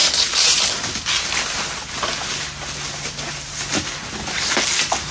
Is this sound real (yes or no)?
yes